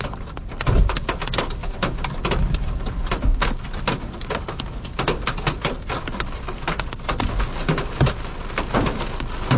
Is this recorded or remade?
recorded